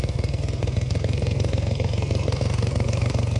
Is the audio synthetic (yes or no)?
yes